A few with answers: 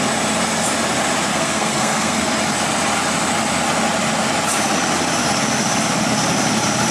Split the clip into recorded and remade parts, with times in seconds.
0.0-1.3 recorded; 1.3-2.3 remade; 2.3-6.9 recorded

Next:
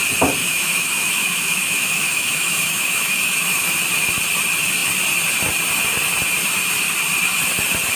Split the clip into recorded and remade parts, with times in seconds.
0.0-0.4 recorded; 0.4-3.8 remade; 3.8-8.0 recorded

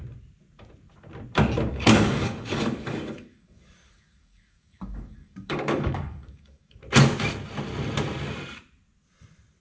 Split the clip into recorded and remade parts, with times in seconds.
0.0-1.7 recorded; 1.7-6.8 remade; 6.8-9.6 recorded

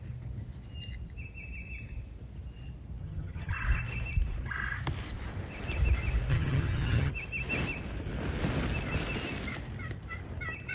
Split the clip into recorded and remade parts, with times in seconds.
0.0-3.0 recorded; 3.0-3.5 remade; 3.5-6.3 recorded; 6.3-7.1 remade; 7.1-10.7 recorded

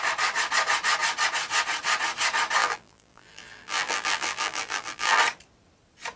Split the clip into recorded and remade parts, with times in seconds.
0.0-2.6 recorded; 2.6-5.2 remade; 5.2-6.2 recorded